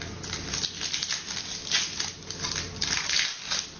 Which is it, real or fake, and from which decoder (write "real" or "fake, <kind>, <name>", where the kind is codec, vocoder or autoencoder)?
real